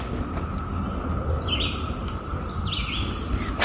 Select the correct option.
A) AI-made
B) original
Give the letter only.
B